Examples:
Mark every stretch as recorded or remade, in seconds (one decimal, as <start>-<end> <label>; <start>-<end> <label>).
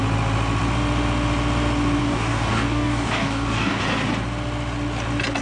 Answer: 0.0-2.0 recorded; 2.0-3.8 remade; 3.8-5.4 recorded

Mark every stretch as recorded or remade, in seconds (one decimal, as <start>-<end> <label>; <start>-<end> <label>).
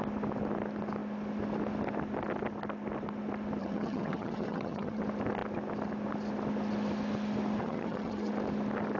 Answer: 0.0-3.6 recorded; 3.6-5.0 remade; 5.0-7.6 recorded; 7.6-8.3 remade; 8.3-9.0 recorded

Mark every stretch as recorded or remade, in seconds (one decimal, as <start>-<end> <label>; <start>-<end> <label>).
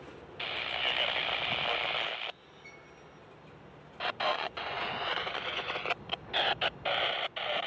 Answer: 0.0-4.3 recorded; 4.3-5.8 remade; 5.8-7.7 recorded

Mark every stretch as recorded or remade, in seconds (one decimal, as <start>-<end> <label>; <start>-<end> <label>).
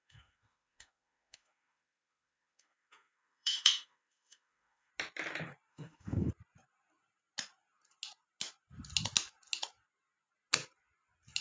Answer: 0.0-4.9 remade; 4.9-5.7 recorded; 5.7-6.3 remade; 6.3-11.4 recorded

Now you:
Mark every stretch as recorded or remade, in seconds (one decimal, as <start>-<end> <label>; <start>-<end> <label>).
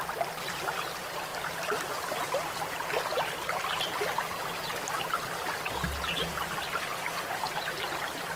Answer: 0.0-8.4 recorded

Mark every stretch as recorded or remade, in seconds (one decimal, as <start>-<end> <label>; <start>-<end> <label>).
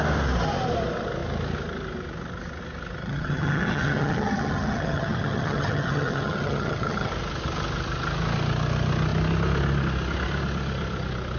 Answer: 0.0-3.0 recorded; 3.0-7.1 remade; 7.1-11.4 recorded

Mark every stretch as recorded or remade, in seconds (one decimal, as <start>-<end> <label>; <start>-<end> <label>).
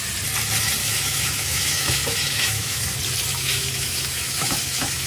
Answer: 0.0-0.8 recorded; 0.8-2.8 remade; 2.8-3.3 recorded; 3.3-5.1 remade